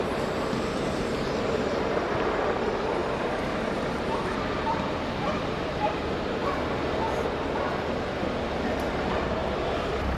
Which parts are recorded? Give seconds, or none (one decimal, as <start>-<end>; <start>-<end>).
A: 3.0-5.4; 6.4-8.9; 9.4-10.2